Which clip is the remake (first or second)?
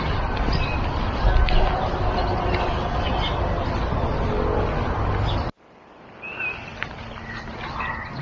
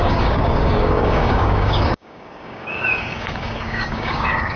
second